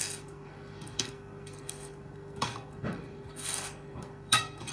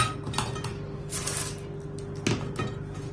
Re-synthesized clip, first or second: first